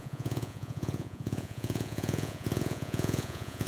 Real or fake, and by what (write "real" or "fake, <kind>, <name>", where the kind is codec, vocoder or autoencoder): fake, vocoder, Vocos